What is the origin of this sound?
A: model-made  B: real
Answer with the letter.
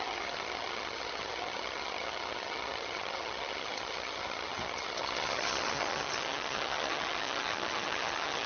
A